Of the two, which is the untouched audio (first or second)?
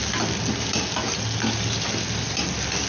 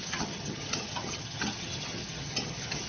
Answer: first